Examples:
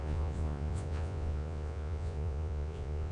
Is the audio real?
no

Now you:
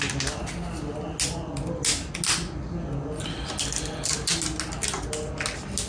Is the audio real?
yes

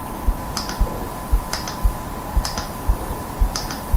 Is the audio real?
no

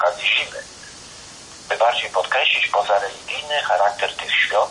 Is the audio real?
yes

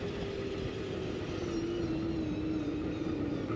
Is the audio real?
yes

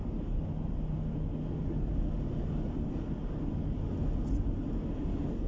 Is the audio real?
yes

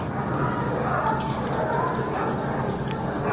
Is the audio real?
yes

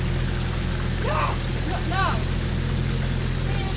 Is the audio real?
yes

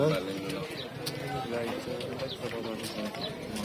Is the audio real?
yes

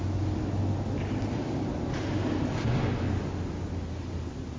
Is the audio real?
yes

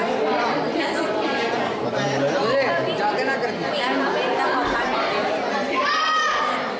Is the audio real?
yes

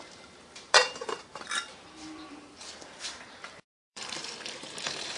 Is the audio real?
no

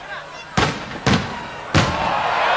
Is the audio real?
yes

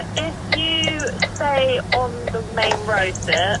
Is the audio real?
no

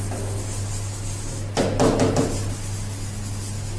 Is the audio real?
yes